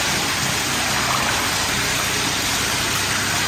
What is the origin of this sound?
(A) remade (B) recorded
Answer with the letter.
B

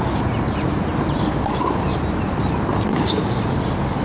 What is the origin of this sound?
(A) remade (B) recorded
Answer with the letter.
B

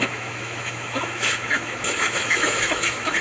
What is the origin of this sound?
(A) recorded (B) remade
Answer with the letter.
B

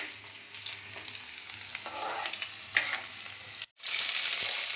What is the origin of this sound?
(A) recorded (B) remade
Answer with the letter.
A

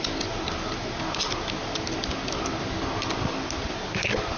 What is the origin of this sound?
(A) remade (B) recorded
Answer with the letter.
B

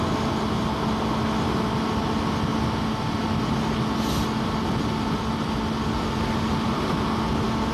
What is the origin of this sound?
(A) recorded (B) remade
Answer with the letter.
A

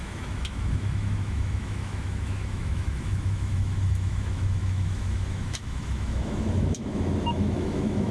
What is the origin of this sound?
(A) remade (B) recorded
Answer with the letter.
A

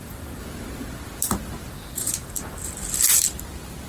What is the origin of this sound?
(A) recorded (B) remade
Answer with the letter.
A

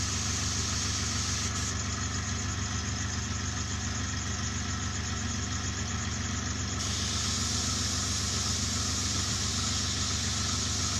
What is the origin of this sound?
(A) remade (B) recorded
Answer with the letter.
B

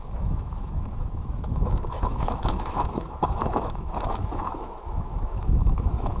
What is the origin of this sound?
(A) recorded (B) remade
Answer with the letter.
B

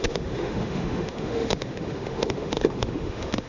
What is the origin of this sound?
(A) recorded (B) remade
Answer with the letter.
B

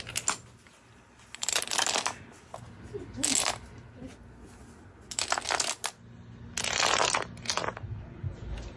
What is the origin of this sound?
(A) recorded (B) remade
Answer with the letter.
A